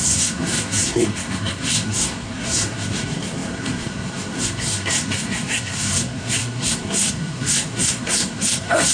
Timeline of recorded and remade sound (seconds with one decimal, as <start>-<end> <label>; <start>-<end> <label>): 0.0-8.9 remade